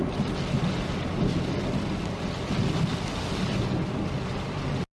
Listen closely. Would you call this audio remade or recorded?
recorded